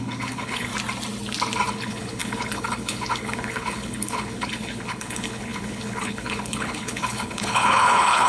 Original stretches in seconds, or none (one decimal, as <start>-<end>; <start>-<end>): 0.7-1.7